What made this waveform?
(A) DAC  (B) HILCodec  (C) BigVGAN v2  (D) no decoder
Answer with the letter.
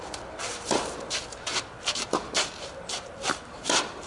C